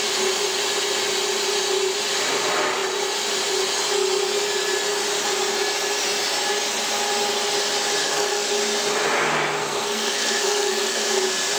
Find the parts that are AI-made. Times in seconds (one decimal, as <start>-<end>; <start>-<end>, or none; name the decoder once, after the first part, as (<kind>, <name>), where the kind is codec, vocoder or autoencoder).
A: 8.0-8.5 (codec, SNAC); 9.6-11.2